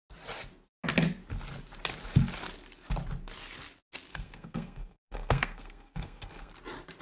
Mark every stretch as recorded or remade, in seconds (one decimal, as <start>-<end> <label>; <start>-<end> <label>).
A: 0.0-4.1 recorded; 4.1-6.5 remade; 6.5-7.0 recorded